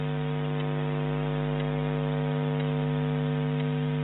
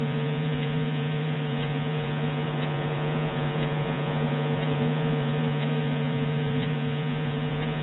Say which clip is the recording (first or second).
first